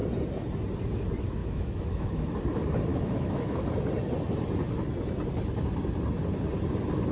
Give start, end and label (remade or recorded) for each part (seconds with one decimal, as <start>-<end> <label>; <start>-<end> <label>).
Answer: 0.0-1.4 recorded; 1.4-2.2 remade; 2.2-2.9 recorded; 2.9-3.6 remade; 3.6-7.1 recorded